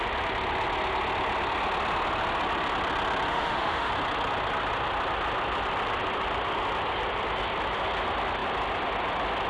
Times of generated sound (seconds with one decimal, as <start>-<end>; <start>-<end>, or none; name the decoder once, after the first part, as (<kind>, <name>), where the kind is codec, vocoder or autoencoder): 3.3-3.9 (autoencoder, DAC-VAE)